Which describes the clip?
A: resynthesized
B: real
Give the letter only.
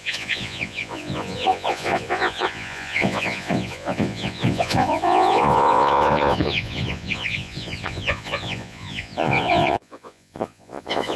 A